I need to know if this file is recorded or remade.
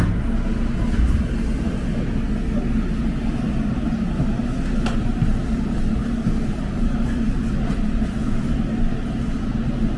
recorded